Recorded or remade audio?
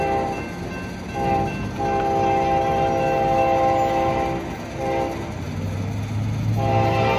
recorded